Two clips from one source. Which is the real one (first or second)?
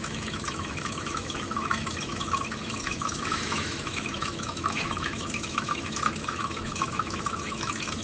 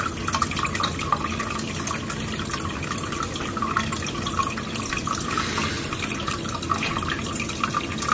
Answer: second